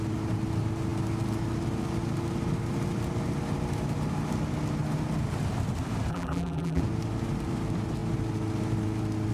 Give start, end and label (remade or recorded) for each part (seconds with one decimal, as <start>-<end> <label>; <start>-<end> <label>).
0.0-6.1 recorded; 6.1-6.8 remade; 6.8-9.3 recorded